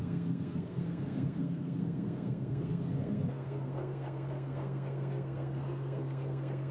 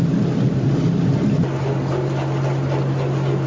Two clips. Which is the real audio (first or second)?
second